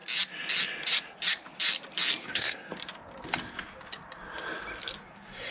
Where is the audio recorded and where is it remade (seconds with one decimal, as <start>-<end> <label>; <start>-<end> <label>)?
0.0-2.2 recorded; 2.2-2.7 remade; 2.7-5.0 recorded; 5.0-5.5 remade